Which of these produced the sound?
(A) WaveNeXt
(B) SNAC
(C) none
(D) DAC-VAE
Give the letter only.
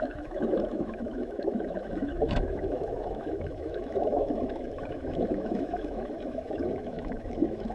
D